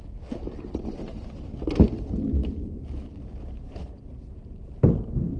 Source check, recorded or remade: recorded